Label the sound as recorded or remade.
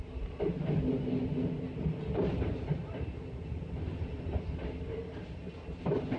recorded